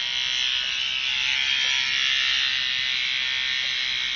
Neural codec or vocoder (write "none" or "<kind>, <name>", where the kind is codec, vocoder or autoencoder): none